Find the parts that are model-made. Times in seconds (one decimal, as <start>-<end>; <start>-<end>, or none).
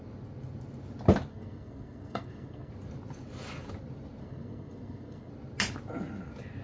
1.3-2.7; 4.2-5.3